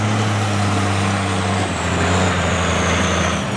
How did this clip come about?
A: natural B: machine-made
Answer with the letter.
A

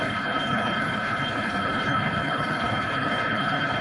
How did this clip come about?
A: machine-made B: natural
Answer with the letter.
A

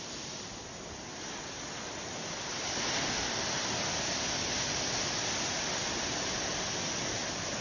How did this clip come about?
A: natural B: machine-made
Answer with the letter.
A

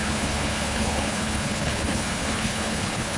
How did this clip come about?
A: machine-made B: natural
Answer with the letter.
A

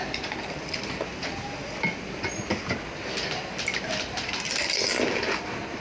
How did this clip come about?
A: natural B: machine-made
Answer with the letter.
A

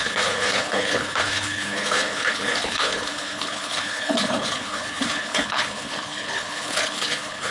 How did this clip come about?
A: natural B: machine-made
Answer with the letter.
B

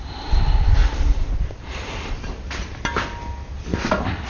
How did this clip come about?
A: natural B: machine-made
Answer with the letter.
A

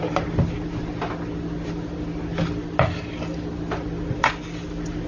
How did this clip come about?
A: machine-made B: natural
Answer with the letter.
B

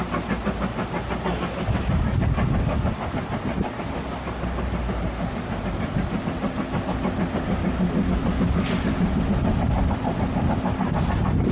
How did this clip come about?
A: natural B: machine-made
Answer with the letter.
A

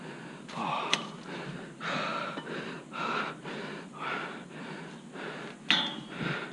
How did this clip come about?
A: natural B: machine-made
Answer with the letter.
A